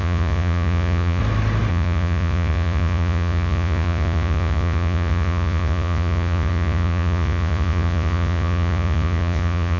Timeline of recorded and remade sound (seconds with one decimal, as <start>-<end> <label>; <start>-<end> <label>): 0.0-1.2 remade; 1.2-1.7 recorded; 1.7-9.8 remade